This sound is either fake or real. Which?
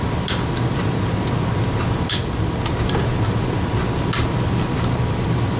real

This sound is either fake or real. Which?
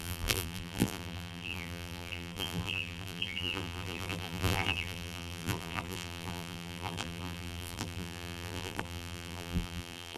fake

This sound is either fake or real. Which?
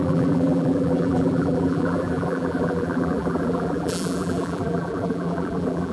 fake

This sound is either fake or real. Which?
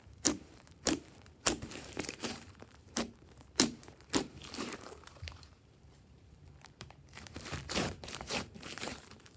fake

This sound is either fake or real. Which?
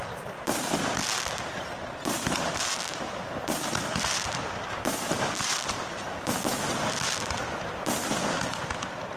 real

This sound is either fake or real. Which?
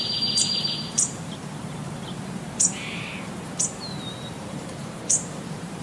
fake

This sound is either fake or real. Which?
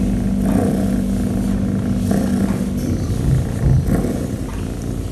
real